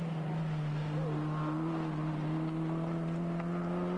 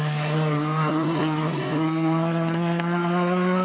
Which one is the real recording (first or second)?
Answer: first